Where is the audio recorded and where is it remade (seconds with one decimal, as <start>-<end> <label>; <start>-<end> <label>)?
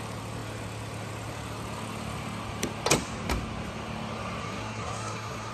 0.0-4.4 recorded; 4.4-5.5 remade